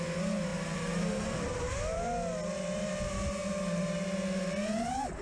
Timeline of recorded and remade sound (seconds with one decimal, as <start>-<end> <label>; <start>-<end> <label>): 0.0-0.5 recorded; 0.5-1.5 remade; 1.5-3.4 recorded; 3.4-5.2 remade

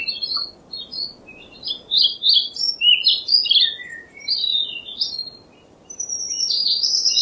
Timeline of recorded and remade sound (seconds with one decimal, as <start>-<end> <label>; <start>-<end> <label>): 0.0-2.8 recorded; 2.8-4.5 remade; 4.5-5.5 recorded; 5.5-7.2 remade

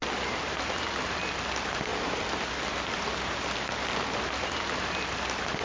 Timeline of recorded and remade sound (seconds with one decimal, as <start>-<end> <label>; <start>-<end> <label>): 0.0-1.9 recorded; 1.9-5.6 remade

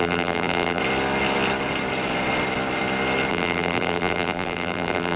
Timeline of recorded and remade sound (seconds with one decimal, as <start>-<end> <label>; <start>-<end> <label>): 0.0-0.8 remade; 0.8-3.3 recorded; 3.3-5.2 remade

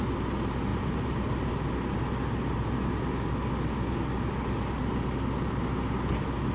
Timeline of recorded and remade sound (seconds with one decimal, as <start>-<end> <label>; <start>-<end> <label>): 0.0-0.7 recorded; 0.7-1.5 remade; 1.5-6.5 recorded

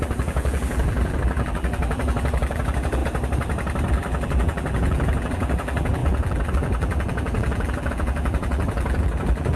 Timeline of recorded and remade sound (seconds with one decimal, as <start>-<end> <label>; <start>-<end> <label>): 0.0-3.0 remade; 3.0-3.9 recorded; 3.9-9.6 remade

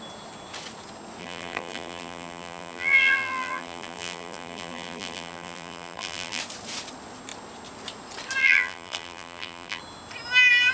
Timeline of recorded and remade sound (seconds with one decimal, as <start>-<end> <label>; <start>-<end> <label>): 0.0-1.2 recorded; 1.2-6.4 remade; 6.4-8.4 recorded; 8.4-9.8 remade; 9.8-10.7 recorded